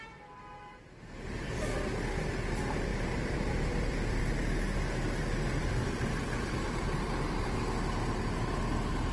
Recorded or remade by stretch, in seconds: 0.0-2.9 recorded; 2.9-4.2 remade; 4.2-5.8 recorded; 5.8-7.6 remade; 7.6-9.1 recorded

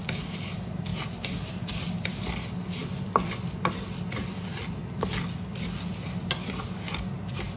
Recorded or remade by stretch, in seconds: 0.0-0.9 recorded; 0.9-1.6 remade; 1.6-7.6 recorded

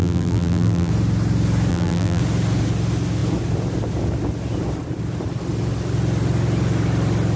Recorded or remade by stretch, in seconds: 0.0-0.9 remade; 0.9-1.7 recorded; 1.7-2.2 remade; 2.2-7.4 recorded

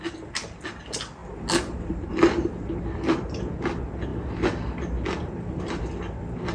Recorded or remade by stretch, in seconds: 0.0-6.5 recorded